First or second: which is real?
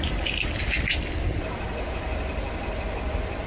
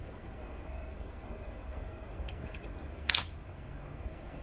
first